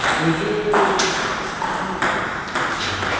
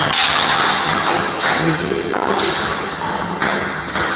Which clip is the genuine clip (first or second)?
first